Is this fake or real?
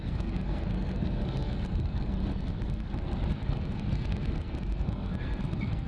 fake